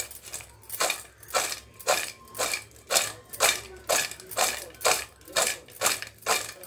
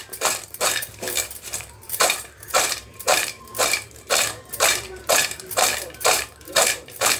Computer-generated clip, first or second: second